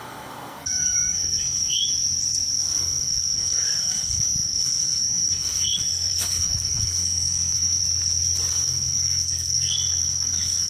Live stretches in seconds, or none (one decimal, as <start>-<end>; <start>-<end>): 1.8-2.5; 7.8-8.5

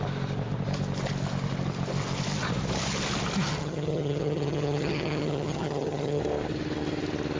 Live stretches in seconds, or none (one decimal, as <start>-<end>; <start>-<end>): 0.0-3.6; 6.2-7.4

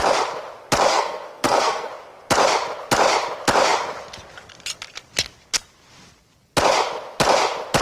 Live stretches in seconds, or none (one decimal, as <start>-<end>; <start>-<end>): 0.0-0.9; 1.9-7.8

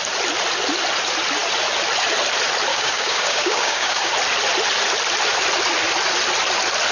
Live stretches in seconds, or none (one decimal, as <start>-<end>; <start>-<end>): 0.0-2.7; 4.1-6.9

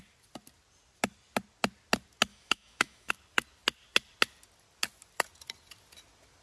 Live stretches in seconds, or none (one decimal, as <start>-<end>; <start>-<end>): 0.0-2.3; 3.1-6.4